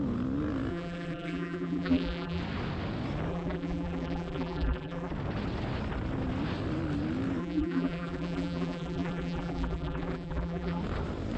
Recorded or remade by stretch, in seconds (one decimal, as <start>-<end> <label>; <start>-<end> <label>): 0.0-0.7 recorded; 0.7-2.4 remade; 2.4-3.3 recorded; 3.3-5.1 remade; 5.1-7.4 recorded; 7.4-10.8 remade; 10.8-11.4 recorded

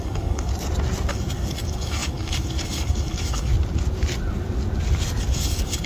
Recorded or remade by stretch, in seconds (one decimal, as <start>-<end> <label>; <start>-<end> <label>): 0.0-0.5 remade; 0.5-1.1 recorded; 1.1-3.5 remade; 3.5-5.3 recorded; 5.3-5.9 remade

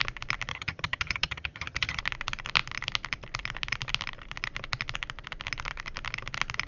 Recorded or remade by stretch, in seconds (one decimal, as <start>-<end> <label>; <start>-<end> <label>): 0.0-0.5 recorded; 0.5-2.0 remade; 2.0-6.7 recorded

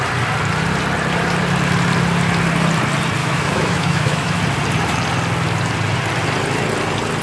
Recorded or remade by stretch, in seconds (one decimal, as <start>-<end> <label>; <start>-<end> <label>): 0.0-3.2 recorded; 3.2-4.4 remade; 4.4-7.2 recorded

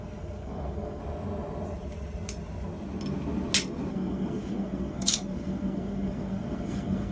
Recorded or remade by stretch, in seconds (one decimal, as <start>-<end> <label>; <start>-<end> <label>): 0.0-1.0 remade; 1.0-3.9 recorded; 3.9-7.1 remade

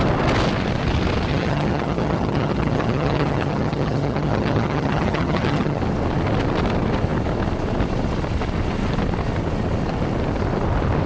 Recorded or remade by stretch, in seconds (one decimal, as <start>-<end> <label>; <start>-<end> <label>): 0.0-1.3 recorded; 1.3-5.8 remade; 5.8-11.1 recorded

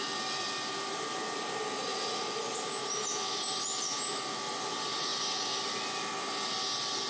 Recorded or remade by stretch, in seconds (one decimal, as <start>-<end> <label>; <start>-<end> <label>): 0.0-7.1 recorded

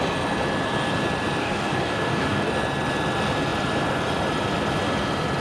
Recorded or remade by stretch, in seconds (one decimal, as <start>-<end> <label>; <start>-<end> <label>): 0.0-1.4 recorded; 1.4-2.5 remade; 2.5-5.4 recorded